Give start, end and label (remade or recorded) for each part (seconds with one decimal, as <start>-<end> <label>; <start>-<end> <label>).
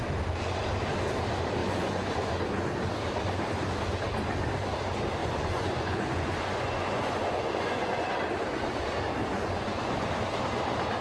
0.0-1.6 recorded; 1.6-2.4 remade; 2.4-5.2 recorded; 5.2-8.2 remade; 8.2-9.2 recorded; 9.2-10.1 remade; 10.1-11.0 recorded